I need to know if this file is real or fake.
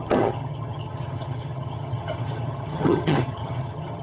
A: fake